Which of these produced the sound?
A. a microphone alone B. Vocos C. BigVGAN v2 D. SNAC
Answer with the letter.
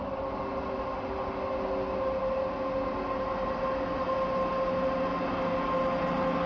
A